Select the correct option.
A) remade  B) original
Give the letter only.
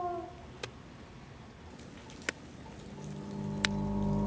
B